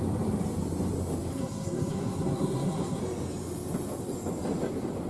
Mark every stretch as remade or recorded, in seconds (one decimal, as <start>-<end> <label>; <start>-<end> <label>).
0.0-1.3 recorded; 1.3-3.0 remade; 3.0-5.1 recorded